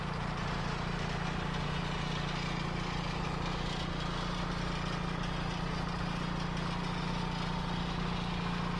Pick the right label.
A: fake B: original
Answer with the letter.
B